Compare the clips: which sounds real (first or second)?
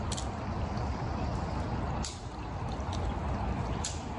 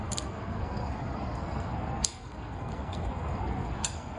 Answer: first